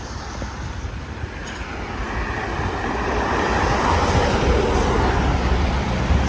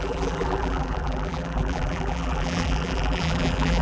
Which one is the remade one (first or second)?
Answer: second